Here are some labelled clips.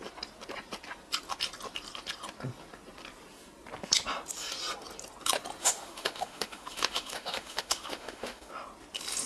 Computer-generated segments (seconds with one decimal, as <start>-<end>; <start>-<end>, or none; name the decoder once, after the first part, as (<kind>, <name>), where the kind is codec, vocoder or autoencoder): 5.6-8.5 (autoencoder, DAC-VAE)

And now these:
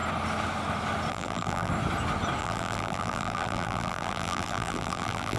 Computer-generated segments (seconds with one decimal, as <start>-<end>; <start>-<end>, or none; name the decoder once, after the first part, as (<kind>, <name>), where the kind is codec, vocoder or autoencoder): 1.1-1.7 (vocoder, BigVGAN v2); 2.4-5.4

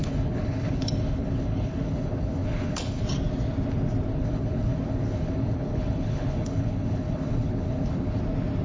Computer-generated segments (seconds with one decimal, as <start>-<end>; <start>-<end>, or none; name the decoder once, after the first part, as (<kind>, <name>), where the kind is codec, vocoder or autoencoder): 0.0-3.0 (codec, HILCodec); 4.1-8.2